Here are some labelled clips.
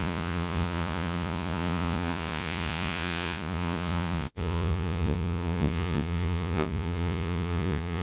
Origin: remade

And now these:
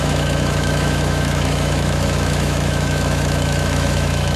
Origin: remade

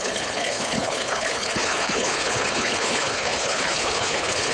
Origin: remade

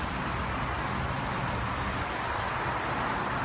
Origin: recorded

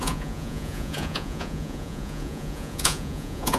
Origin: remade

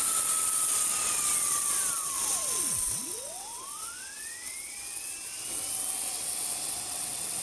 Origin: remade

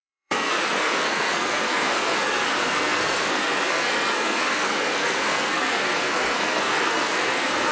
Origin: remade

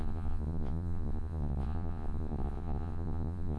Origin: remade